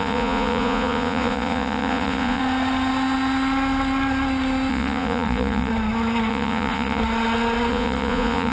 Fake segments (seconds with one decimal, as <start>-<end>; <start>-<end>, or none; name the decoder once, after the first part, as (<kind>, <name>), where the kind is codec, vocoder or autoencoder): 0.0-2.4 (vocoder, Vocos); 4.7-5.7; 6.3-7.0; 7.7-8.5